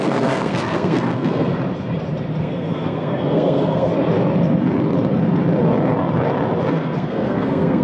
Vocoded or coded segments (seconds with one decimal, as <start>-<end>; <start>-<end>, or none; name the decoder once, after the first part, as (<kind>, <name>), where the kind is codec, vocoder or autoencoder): 0.0-1.5 (codec, SNAC); 2.4-3.9; 6.7-7.8